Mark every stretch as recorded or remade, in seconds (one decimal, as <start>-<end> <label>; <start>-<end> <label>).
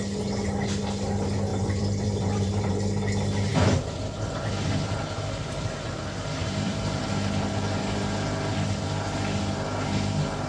0.0-1.5 recorded; 1.5-2.7 remade; 2.7-6.4 recorded; 6.4-7.0 remade; 7.0-10.5 recorded